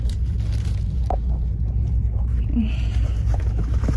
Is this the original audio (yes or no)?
no